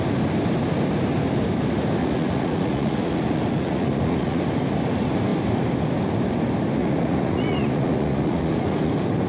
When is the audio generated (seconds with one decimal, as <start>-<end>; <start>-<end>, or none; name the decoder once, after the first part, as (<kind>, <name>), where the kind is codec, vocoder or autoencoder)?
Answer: 2.0-4.4 (vocoder, Vocos); 6.8-8.9